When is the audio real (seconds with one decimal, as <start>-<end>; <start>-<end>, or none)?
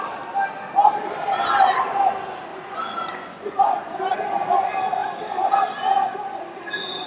0.0-2.5; 4.0-7.1